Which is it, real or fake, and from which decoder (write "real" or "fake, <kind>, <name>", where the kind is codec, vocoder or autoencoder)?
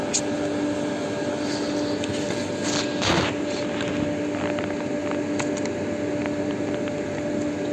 real